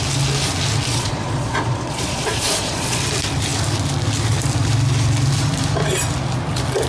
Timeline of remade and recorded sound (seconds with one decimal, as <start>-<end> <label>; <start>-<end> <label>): 0.0-0.9 recorded; 0.9-3.0 remade; 3.0-6.9 recorded